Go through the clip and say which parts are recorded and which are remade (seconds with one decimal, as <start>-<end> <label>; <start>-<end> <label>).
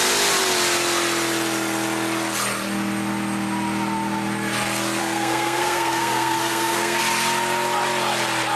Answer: 0.0-5.0 recorded; 5.0-7.0 remade; 7.0-8.6 recorded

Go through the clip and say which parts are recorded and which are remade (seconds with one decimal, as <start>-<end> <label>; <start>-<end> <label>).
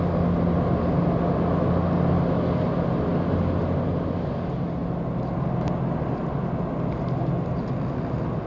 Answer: 0.0-8.5 recorded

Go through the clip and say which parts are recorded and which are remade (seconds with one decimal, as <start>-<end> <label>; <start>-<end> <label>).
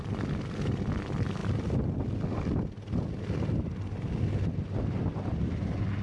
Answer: 0.0-6.0 recorded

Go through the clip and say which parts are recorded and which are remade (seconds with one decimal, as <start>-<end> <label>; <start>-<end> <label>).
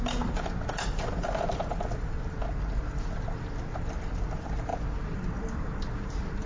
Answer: 0.0-4.7 remade; 4.7-5.3 recorded; 5.3-6.5 remade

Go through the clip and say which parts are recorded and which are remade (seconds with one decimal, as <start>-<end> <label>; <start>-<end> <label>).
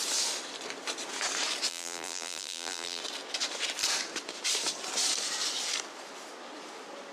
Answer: 0.0-1.7 recorded; 1.7-3.0 remade; 3.0-7.1 recorded